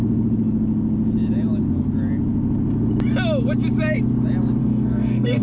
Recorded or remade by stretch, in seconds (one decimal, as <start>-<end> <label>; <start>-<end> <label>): 0.0-4.6 recorded; 4.6-5.4 remade